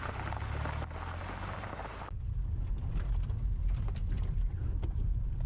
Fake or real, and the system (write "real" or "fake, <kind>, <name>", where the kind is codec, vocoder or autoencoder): real